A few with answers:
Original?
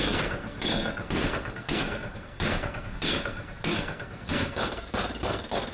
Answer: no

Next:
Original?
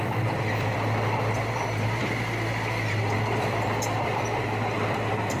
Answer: no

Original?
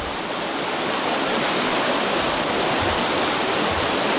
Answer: yes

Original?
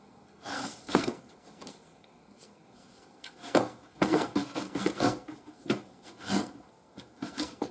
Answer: no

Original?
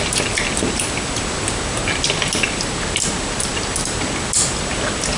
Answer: yes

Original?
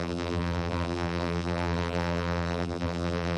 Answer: no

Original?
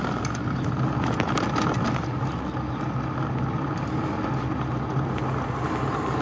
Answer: yes